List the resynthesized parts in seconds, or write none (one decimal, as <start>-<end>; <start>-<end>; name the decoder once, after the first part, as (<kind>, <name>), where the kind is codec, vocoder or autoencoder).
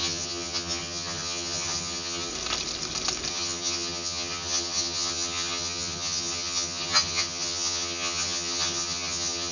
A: 0.0-2.3 (vocoder, HiFi-GAN); 3.3-9.5